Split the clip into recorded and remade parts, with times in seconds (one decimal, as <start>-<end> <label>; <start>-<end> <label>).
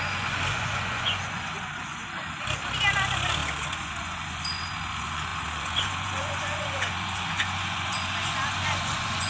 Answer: 0.0-2.0 remade; 2.0-3.0 recorded; 3.0-9.3 remade